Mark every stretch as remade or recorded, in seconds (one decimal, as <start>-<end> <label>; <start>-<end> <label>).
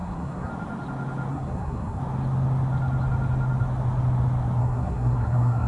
0.0-0.5 remade; 0.5-1.3 recorded; 1.3-2.0 remade; 2.0-4.6 recorded; 4.6-5.7 remade